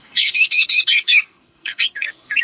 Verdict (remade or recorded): remade